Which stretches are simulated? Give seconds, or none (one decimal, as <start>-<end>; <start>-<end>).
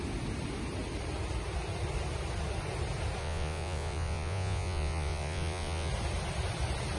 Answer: 3.2-5.9